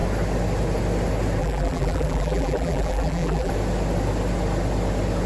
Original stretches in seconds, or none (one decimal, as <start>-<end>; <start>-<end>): 0.0-1.4; 3.5-5.3